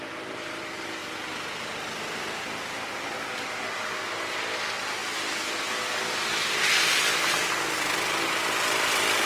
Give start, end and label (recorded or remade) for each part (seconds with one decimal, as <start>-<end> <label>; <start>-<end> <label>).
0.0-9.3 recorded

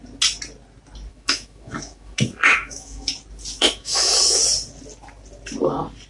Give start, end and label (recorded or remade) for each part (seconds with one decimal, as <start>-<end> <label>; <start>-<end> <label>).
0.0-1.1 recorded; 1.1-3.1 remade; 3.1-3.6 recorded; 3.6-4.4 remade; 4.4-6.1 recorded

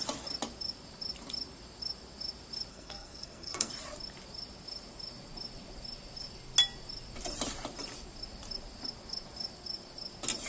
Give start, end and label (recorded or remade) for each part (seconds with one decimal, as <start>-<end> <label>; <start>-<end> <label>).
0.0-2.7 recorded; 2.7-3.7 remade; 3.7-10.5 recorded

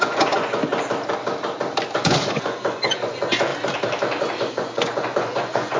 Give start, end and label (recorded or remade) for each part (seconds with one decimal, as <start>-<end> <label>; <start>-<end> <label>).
0.0-0.6 remade; 0.6-2.0 recorded; 2.0-3.5 remade; 3.5-4.5 recorded; 4.5-5.8 remade

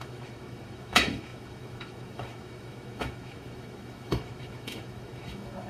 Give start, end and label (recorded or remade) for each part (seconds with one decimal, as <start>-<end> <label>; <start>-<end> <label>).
0.0-5.7 remade